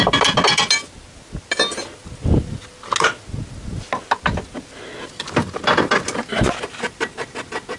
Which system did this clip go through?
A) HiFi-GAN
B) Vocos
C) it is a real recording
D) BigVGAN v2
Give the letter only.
C